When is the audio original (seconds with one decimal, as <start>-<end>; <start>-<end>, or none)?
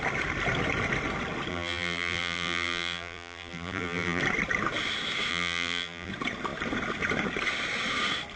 0.0-1.5; 4.2-5.3; 6.1-8.4